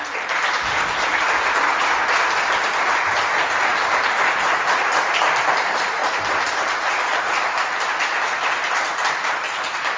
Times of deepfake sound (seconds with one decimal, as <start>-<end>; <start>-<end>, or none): none